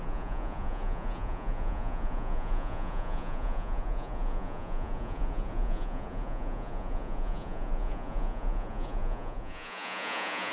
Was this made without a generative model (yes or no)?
no